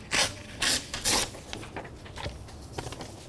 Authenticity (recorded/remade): recorded